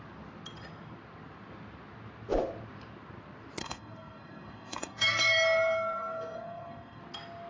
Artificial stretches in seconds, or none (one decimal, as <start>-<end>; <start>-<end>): 3.6-7.0